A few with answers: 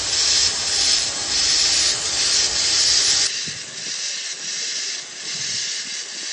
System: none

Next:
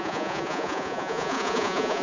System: vocoder, Vocos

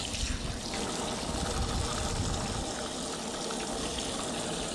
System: none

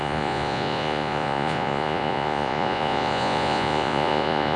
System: vocoder, Vocos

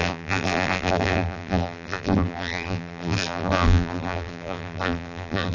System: vocoder, BigVGAN v2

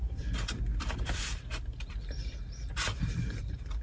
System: vocoder, BigVGAN v2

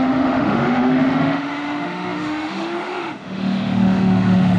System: autoencoder, DAC-VAE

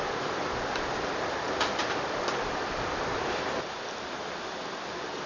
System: vocoder, BigVGAN v2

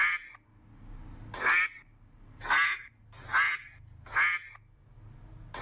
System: none